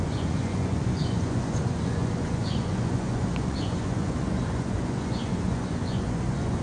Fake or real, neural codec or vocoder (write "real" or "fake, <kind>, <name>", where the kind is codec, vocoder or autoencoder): fake, vocoder, Vocos